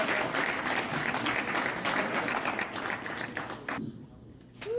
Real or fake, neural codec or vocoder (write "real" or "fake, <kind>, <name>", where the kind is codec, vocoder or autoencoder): real